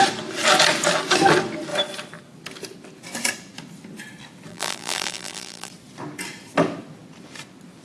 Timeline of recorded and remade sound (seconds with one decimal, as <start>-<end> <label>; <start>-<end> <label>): 0.0-4.5 recorded; 4.5-5.7 remade; 5.7-7.8 recorded